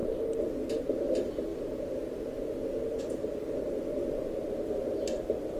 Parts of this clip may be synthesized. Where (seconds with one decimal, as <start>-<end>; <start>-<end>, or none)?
none